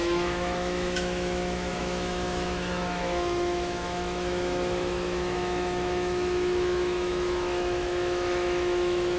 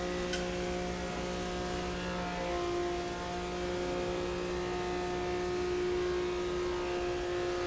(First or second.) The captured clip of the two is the second